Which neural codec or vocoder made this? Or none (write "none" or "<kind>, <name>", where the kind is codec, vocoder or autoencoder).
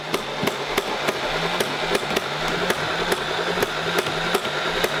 none